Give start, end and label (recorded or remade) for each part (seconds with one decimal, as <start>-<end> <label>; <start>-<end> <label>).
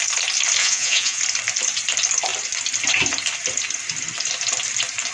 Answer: 0.0-0.6 recorded; 0.6-1.2 remade; 1.2-5.1 recorded